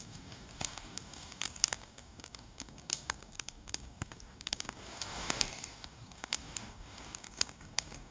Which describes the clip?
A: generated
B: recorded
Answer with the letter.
A